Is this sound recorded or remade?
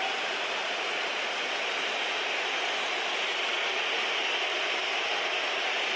recorded